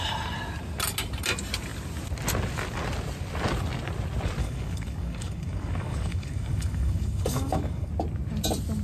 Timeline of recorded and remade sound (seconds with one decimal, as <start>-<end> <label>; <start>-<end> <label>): 0.0-4.4 recorded; 4.4-7.9 remade; 7.9-8.8 recorded

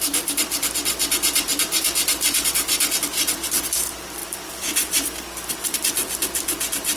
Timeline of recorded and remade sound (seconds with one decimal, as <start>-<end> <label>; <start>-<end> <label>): 0.0-7.0 remade